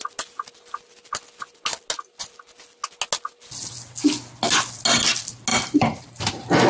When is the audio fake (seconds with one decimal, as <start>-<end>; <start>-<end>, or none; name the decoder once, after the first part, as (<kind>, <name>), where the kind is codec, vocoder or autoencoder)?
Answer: 5.5-6.3 (vocoder, BigVGAN v2)